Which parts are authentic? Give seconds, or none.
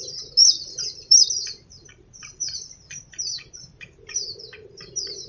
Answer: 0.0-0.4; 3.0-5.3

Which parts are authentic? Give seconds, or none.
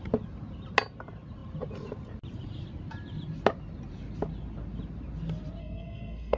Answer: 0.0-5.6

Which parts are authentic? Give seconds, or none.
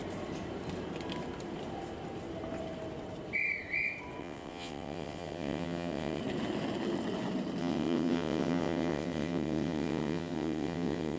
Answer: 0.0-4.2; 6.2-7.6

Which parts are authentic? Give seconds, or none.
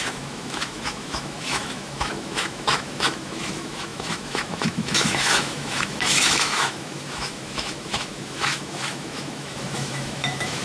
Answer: none